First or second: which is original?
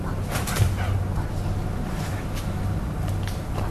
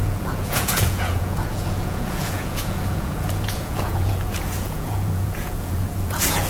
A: first